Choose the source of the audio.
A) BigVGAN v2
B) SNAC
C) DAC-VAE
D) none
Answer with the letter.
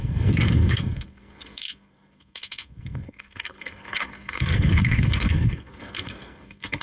B